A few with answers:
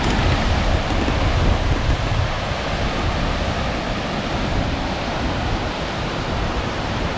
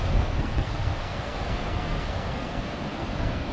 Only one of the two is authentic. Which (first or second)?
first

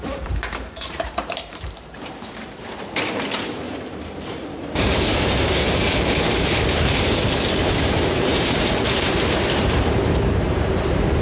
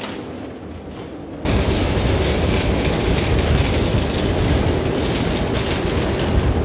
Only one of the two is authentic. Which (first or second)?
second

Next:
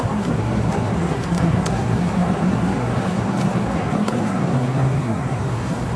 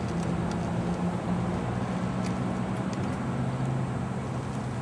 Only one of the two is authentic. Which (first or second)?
second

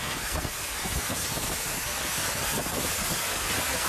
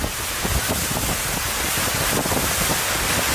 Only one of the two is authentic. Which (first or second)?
second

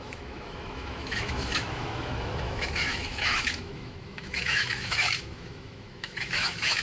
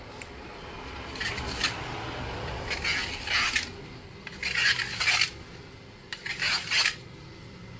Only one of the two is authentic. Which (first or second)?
second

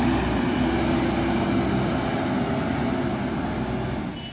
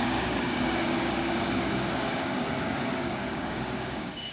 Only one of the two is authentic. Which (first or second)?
first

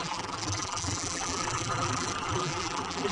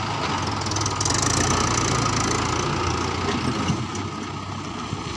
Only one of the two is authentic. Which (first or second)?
second